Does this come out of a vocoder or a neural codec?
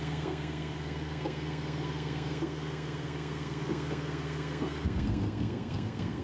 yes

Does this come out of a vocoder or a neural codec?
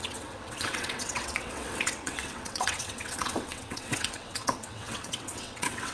yes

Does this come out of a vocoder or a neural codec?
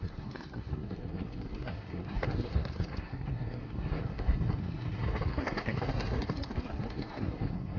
yes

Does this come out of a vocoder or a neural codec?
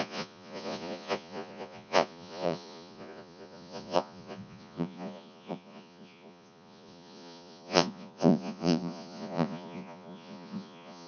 yes